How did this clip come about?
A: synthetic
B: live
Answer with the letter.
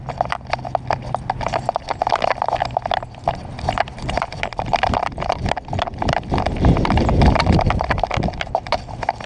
B